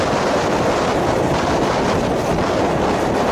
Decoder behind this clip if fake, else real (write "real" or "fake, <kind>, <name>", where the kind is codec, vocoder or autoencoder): real